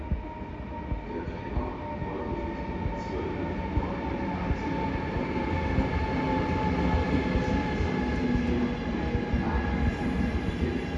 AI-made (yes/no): no